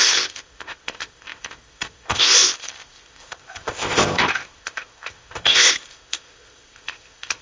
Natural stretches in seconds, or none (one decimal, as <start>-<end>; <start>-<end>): none